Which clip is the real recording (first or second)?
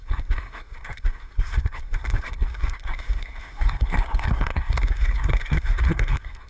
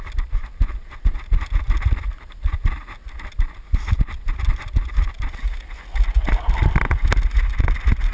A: second